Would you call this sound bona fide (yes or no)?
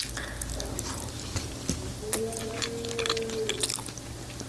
yes